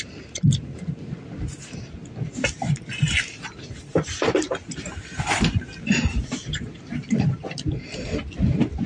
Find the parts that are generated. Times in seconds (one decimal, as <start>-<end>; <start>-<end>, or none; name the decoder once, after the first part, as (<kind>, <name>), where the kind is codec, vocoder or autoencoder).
0.0-2.0 (vocoder, BigVGAN v2); 3.3-8.9